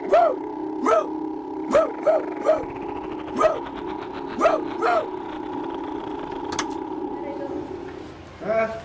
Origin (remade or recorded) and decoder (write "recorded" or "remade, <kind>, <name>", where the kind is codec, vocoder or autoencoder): recorded